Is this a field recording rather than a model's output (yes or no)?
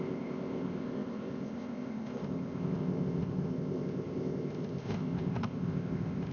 no